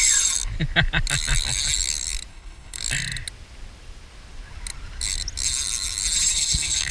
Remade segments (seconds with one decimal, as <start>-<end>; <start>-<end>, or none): 2.3-2.8; 6.3-6.9